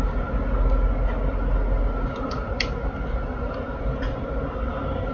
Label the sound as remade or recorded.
recorded